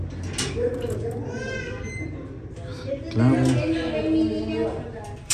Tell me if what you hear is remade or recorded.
recorded